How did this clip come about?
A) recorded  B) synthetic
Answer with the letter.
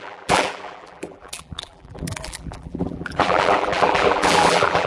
B